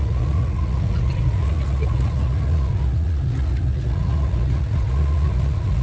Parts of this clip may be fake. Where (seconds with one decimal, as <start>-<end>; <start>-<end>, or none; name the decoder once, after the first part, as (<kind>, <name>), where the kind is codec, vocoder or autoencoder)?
0.0-5.8 (vocoder, Vocos)